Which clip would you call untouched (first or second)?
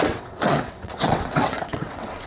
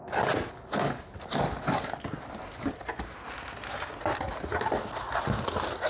second